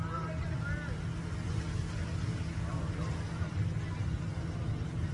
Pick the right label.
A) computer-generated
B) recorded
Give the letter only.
B